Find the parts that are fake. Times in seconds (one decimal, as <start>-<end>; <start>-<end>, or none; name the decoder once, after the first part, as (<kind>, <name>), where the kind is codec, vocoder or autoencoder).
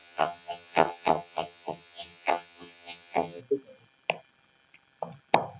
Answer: 0.0-3.4 (vocoder, HiFi-GAN)